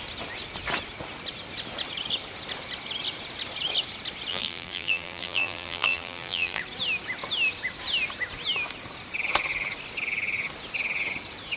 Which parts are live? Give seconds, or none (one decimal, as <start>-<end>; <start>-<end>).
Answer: 0.0-4.3; 6.6-11.6